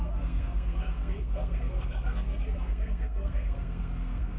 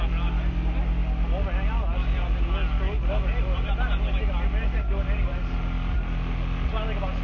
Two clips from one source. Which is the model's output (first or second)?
first